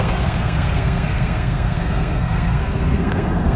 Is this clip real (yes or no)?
no